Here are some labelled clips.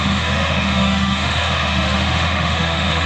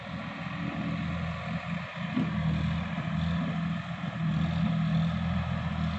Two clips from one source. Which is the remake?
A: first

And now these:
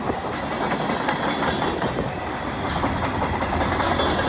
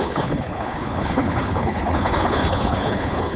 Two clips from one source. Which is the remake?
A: second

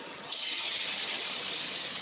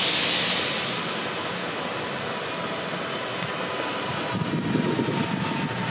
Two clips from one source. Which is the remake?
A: first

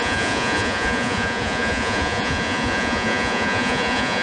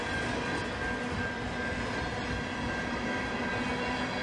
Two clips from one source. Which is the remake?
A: first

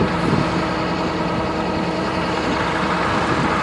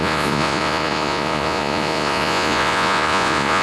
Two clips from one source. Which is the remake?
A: second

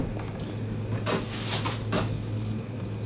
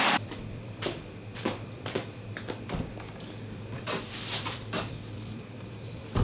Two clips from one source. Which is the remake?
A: second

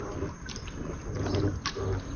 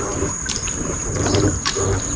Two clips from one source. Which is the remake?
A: second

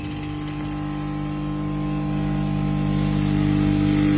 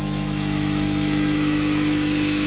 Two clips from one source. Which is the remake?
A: second